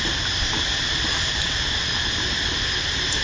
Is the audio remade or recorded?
recorded